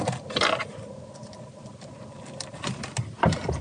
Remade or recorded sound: recorded